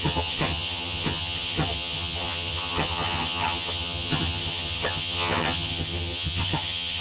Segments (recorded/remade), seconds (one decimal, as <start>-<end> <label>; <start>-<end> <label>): 0.0-7.0 remade